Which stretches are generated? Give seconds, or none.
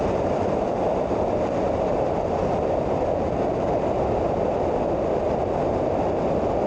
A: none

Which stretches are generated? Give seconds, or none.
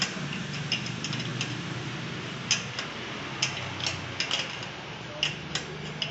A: none